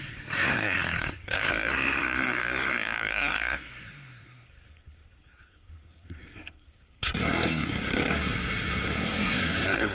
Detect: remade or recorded remade